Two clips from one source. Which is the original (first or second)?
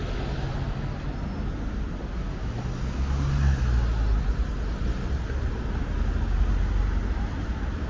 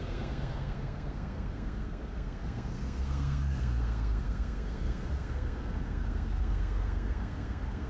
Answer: first